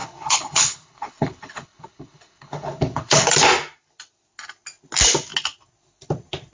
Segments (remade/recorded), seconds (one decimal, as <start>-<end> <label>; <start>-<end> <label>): 0.0-3.3 remade; 3.3-6.5 recorded